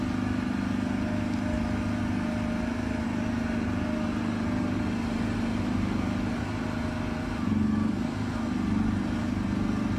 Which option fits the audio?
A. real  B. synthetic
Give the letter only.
A